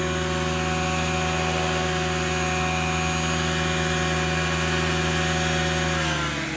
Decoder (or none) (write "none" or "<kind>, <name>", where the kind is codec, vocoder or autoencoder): none